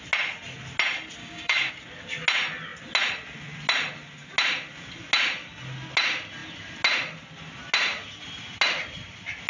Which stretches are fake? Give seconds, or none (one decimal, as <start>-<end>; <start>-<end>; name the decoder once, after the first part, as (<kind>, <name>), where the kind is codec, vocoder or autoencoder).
1.2-1.7 (codec, DAC)